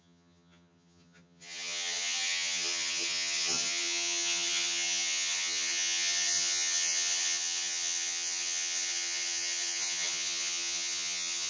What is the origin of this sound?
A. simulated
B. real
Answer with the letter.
A